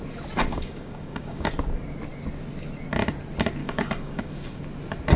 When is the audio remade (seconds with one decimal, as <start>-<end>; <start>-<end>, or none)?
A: 0.5-1.5; 3.6-4.6